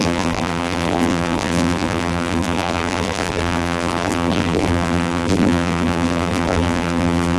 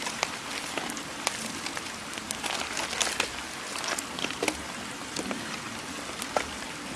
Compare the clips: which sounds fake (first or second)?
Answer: first